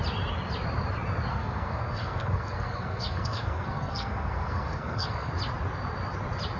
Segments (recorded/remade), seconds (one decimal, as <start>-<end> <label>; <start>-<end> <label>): 0.0-1.3 recorded; 1.3-5.3 remade; 5.3-6.6 recorded